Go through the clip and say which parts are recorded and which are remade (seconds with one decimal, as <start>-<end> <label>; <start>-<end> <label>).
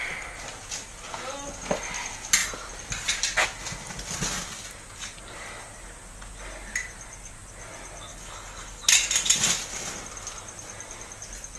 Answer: 0.0-8.1 recorded; 8.1-8.8 remade; 8.8-11.6 recorded